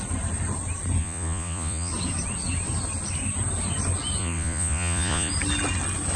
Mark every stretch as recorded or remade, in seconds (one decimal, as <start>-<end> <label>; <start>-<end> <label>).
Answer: 0.0-1.0 recorded; 1.0-1.9 remade; 1.9-4.2 recorded; 4.2-5.3 remade; 5.3-6.2 recorded